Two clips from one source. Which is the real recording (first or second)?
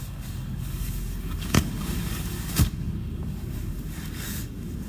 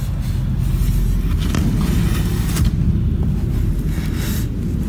second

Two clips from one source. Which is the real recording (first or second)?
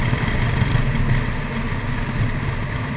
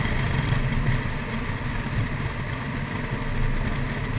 first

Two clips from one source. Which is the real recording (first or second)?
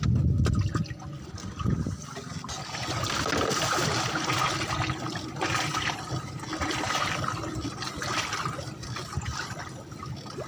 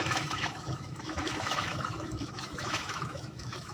first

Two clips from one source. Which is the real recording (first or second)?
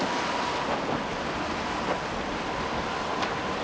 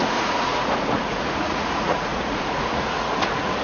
first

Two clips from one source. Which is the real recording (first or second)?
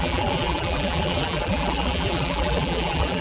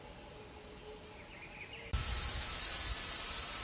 second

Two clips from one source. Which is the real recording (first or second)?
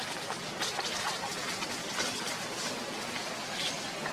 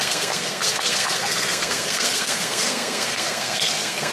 first